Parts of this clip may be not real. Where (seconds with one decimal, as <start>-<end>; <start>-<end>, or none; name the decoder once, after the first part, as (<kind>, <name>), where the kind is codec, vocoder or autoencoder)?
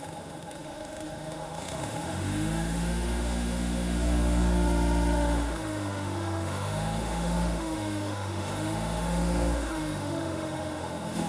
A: 0.0-11.3 (autoencoder, DAC-VAE)